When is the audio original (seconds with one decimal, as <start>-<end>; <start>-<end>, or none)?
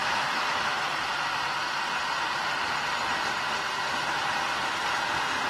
0.6-5.5